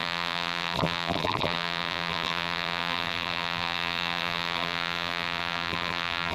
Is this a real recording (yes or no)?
no